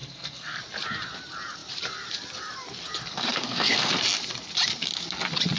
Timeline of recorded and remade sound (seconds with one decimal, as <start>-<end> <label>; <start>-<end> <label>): 0.0-0.6 remade; 0.6-3.1 recorded; 3.1-3.9 remade; 3.9-5.6 recorded